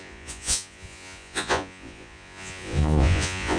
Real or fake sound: fake